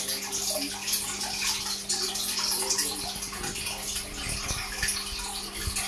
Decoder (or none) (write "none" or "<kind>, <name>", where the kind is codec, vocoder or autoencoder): none